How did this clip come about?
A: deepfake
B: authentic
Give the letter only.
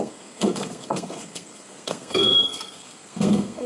A